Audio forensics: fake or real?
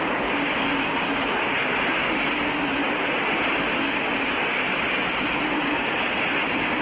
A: real